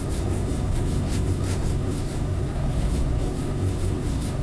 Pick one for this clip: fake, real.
fake